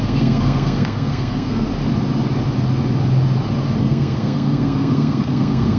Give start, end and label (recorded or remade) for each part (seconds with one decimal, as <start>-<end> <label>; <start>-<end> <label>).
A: 0.0-1.7 remade; 1.7-3.8 recorded; 3.8-5.8 remade